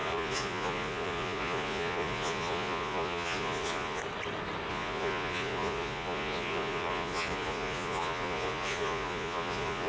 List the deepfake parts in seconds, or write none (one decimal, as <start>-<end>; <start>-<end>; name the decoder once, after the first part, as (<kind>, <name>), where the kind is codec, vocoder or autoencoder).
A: 0.0-4.0 (vocoder, Vocos); 4.7-9.9